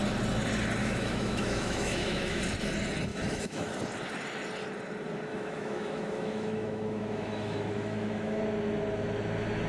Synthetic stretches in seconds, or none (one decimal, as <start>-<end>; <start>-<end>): 0.8-2.4; 3.1-3.7; 5.3-8.4

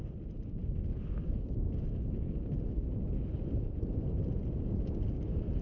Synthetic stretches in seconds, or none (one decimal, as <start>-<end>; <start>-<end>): none

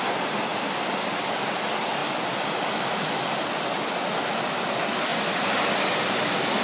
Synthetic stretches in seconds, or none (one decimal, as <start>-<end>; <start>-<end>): none

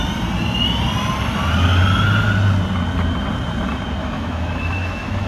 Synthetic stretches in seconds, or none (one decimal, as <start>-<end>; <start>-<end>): 4.0-5.3

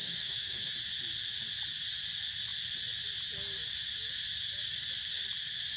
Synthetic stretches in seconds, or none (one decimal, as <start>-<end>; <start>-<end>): 0.0-0.7

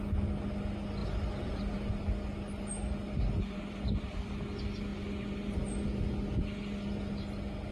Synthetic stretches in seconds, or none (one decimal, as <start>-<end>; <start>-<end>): none

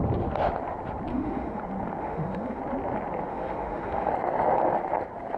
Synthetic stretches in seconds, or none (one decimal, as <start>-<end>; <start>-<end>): 1.1-1.6; 2.0-2.6; 3.3-4.1

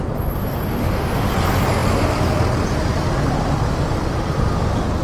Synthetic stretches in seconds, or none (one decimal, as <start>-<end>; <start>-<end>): 0.8-1.3